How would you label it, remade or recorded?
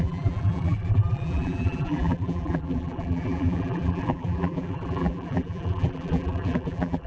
remade